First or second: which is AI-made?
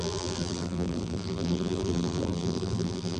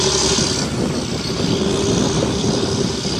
first